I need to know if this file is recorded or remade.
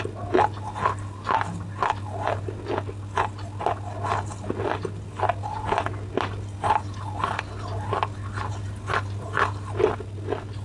recorded